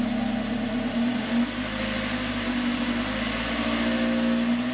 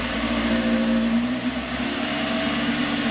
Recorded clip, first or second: first